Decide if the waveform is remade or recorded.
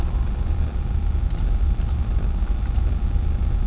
recorded